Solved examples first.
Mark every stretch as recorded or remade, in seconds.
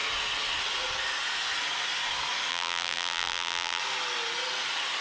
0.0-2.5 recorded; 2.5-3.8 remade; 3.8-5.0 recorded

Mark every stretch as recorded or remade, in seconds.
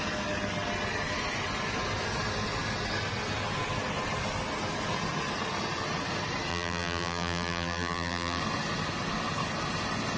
0.0-6.5 recorded; 6.5-8.4 remade; 8.4-10.2 recorded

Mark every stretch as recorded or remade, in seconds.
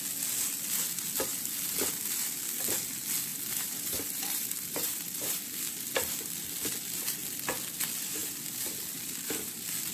0.0-1.3 recorded; 1.3-1.9 remade; 1.9-3.3 recorded; 3.3-6.1 remade; 6.1-8.2 recorded; 8.2-9.5 remade; 9.5-9.9 recorded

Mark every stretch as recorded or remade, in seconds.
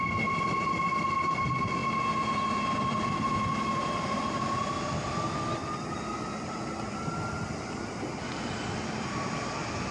0.0-1.8 remade; 1.8-2.8 recorded; 2.8-5.6 remade; 5.6-9.5 recorded; 9.5-9.9 remade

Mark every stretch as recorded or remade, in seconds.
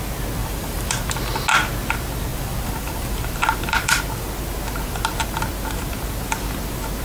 0.0-0.4 recorded; 0.4-1.1 remade; 1.1-2.3 recorded; 2.3-4.0 remade; 4.0-7.0 recorded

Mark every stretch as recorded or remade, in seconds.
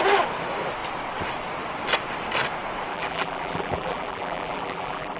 0.0-2.9 recorded; 2.9-5.2 remade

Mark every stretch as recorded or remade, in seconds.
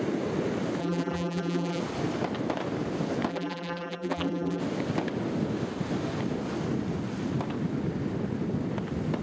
0.0-0.8 recorded; 0.8-1.8 remade; 1.8-3.3 recorded; 3.3-4.6 remade; 4.6-9.2 recorded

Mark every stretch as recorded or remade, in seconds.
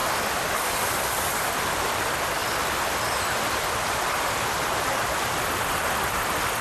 0.0-1.5 recorded; 1.5-2.4 remade; 2.4-3.7 recorded; 3.7-6.6 remade